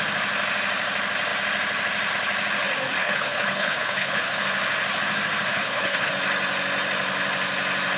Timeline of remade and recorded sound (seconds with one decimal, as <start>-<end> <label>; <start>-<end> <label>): 0.0-3.0 recorded; 3.0-4.4 remade; 4.4-5.5 recorded; 5.5-6.1 remade; 6.1-8.0 recorded